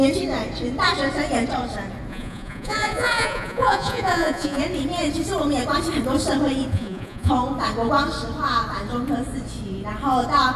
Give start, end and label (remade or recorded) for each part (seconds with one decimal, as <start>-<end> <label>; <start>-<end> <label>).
0.0-2.1 recorded; 2.1-4.6 remade; 4.6-6.7 recorded; 6.7-7.3 remade; 7.3-10.6 recorded